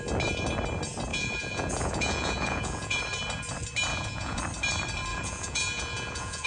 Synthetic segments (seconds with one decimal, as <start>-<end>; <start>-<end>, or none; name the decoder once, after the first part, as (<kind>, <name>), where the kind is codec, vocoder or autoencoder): 1.1-3.0 (vocoder, Vocos); 3.9-4.4; 5.1-6.5